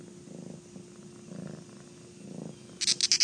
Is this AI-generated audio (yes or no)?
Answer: no